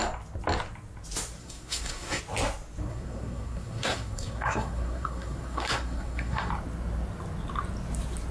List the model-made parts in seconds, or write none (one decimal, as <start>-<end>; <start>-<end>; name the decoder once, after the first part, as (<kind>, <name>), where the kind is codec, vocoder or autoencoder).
1.4-2.2 (codec, SNAC); 2.9-6.5